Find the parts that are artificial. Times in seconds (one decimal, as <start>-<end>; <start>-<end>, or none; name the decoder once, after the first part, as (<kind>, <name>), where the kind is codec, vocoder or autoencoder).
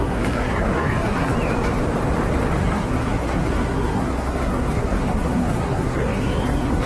0.0-1.3 (codec, SNAC); 2.6-6.9